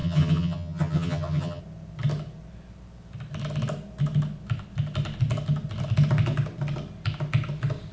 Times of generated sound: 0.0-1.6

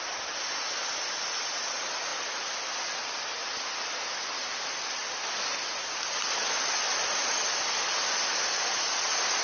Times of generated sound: none

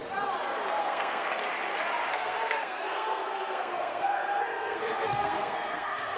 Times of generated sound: 0.8-1.4; 2.1-6.2

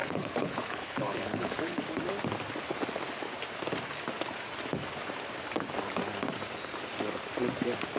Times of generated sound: 0.0-1.8

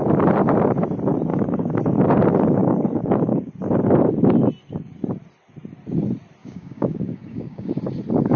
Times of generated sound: 1.3-1.8; 2.6-3.5; 6.4-7.8

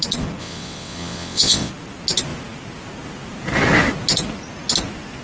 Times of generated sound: 0.4-1.7